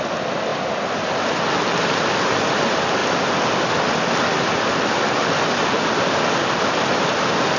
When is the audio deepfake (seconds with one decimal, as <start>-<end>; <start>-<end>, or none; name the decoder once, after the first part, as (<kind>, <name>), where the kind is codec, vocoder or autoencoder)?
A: none